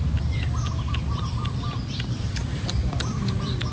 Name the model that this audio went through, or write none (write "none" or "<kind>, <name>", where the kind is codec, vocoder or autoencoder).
vocoder, BigVGAN v2